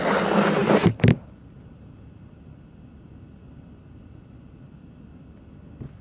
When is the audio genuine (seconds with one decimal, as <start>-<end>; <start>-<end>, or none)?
0.0-0.6; 1.6-6.0